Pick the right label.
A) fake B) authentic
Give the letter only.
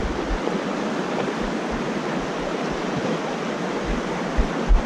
B